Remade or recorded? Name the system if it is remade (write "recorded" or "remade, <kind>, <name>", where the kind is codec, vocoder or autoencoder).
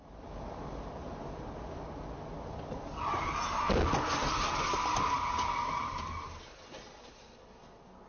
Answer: recorded